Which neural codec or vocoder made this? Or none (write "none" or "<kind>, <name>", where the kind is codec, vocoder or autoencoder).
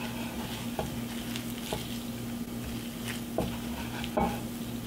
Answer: none